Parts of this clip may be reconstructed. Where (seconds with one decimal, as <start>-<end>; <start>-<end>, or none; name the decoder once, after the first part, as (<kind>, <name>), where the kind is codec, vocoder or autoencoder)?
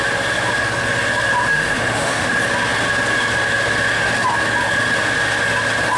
1.5-2.3 (autoencoder, DAC-VAE)